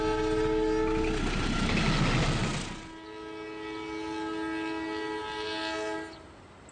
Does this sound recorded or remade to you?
recorded